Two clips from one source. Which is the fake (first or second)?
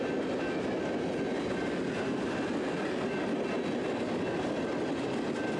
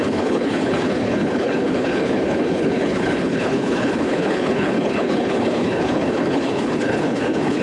second